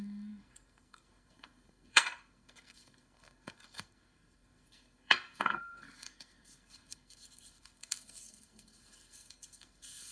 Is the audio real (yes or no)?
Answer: no